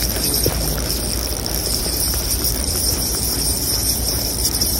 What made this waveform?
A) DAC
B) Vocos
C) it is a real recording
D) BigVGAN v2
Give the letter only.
D